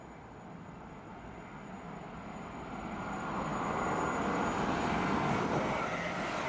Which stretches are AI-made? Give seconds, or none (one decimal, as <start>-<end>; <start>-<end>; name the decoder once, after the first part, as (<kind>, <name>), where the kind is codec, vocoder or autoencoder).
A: none